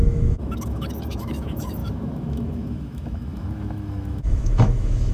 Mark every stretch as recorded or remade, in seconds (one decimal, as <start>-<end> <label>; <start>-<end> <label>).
0.0-5.1 remade